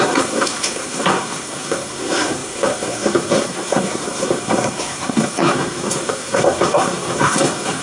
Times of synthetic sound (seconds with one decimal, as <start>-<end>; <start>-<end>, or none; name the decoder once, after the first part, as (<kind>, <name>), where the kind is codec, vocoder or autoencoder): 0.0-7.8 (codec, SNAC)